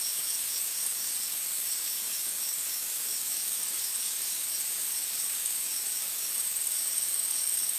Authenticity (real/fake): fake